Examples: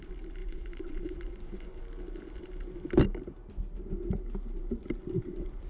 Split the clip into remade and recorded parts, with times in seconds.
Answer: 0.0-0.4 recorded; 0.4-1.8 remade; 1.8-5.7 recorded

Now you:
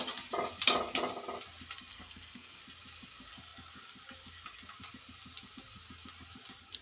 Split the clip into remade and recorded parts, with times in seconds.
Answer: 0.0-1.9 recorded; 1.9-2.6 remade; 2.6-6.8 recorded

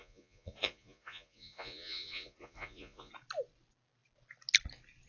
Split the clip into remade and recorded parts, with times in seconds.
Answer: 0.0-3.1 remade; 3.1-5.1 recorded